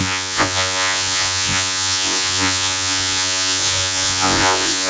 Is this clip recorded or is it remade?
remade